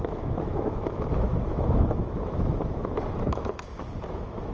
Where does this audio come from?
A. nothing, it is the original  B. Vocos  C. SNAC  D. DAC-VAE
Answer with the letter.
D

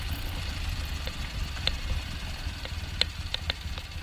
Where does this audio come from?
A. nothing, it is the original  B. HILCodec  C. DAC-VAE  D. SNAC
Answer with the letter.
A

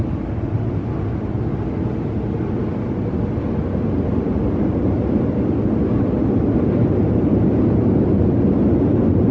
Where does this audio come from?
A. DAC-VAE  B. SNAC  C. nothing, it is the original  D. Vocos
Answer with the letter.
C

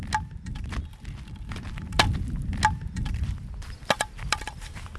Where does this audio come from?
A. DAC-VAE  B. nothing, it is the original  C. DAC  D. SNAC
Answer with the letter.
B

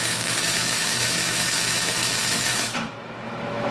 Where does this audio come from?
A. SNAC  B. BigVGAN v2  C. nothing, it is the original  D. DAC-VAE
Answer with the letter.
D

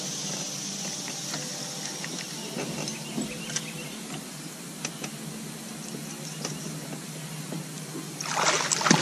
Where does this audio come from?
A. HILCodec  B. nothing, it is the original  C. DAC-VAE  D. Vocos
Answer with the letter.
B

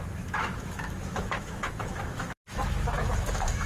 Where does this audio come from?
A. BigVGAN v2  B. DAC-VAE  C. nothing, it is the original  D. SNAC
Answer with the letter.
B